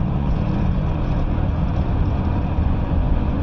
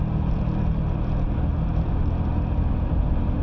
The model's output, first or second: first